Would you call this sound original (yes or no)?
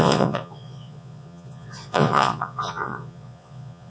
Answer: no